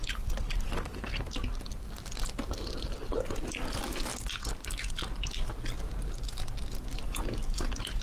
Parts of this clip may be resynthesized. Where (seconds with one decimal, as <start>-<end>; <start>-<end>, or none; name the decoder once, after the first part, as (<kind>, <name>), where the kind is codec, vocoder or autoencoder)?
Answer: 0.0-3.4 (vocoder, BigVGAN v2)